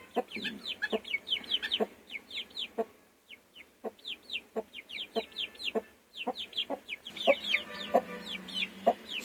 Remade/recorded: recorded